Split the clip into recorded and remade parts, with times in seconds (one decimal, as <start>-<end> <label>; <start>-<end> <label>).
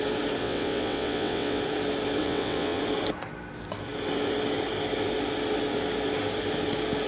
0.0-0.4 recorded; 0.4-1.6 remade; 1.6-2.2 recorded; 2.2-2.8 remade; 2.8-7.1 recorded